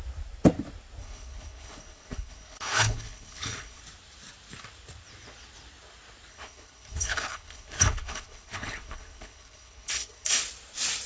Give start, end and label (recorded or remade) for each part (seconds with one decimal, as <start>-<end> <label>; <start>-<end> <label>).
0.0-1.0 recorded; 1.0-3.8 remade; 3.8-6.3 recorded; 6.3-10.4 remade; 10.4-11.1 recorded